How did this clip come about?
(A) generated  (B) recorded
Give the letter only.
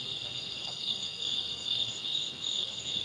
A